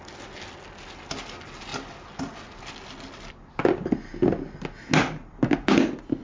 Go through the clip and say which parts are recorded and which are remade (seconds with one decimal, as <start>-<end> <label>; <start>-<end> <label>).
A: 0.0-6.2 recorded